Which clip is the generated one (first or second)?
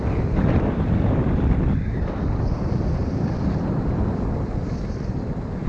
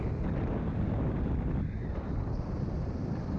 first